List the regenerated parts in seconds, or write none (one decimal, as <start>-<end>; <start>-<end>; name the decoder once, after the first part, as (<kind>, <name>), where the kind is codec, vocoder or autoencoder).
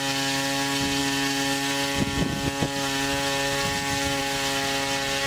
none